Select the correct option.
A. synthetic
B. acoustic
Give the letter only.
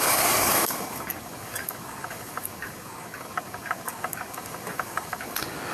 A